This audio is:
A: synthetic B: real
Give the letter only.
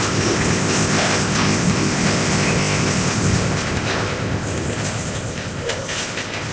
A